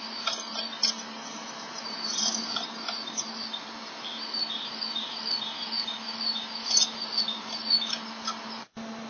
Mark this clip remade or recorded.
recorded